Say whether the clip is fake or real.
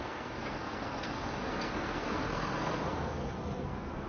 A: fake